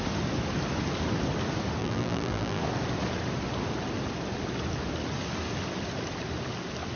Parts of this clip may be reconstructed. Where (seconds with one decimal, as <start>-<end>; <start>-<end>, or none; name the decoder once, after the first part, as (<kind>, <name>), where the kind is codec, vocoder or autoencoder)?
1.8-2.6 (vocoder, BigVGAN v2)